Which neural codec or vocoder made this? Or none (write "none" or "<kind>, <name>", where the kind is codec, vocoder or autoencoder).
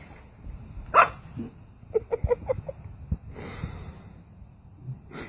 none